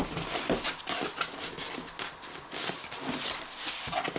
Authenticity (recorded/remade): recorded